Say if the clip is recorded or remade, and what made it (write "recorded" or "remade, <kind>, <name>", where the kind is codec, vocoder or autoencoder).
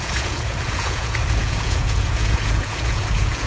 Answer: remade, vocoder, Vocos